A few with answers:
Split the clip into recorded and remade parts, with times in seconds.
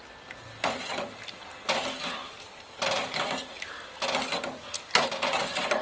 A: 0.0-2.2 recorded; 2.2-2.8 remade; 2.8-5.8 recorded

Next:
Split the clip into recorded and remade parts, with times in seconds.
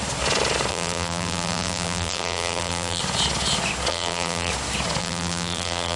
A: 0.0-0.7 recorded; 0.7-3.0 remade; 3.0-3.9 recorded; 3.9-4.5 remade; 4.5-5.0 recorded; 5.0-6.0 remade